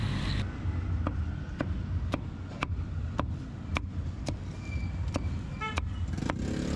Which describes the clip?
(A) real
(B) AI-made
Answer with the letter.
A